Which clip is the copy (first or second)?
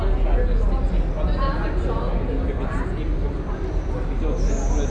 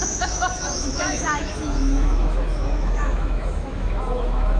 second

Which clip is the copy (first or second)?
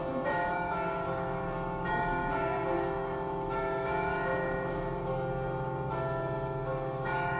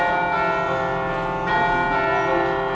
first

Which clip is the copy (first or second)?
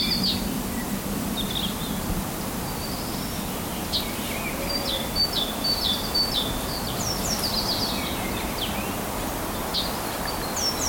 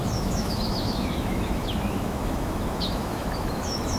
second